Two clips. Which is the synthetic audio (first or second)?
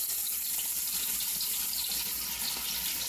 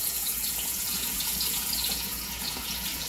second